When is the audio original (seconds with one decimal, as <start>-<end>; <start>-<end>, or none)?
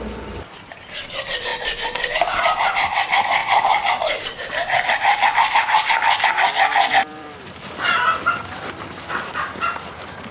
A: 0.0-3.4; 8.3-10.3